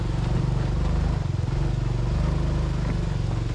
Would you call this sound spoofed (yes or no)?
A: no